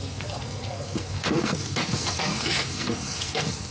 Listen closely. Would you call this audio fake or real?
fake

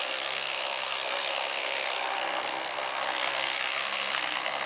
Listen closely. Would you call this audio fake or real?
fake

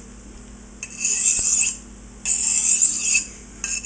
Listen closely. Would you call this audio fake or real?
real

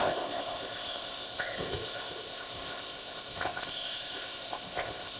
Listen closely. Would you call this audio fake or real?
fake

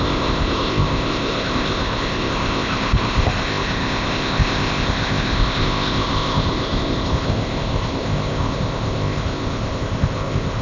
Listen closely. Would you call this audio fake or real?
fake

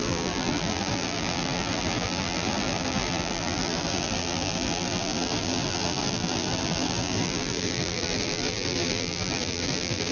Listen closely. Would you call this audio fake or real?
fake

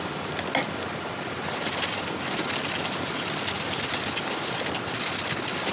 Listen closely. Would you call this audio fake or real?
real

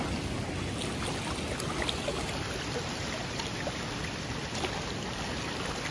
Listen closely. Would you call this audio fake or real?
real